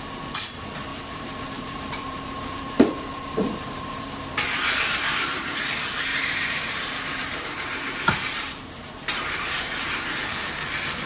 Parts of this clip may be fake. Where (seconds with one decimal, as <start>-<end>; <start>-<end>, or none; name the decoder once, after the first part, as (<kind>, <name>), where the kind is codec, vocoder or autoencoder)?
0.9-5.6 (vocoder, BigVGAN v2); 6.1-9.9